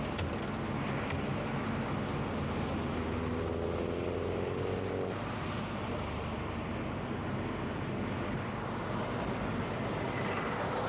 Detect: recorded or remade recorded